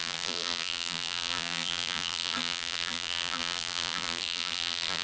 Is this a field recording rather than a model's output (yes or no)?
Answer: no